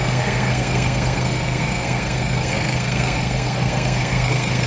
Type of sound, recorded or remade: remade